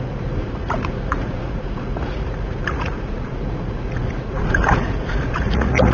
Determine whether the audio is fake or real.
fake